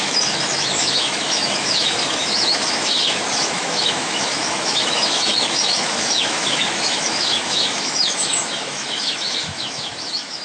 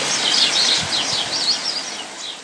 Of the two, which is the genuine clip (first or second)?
second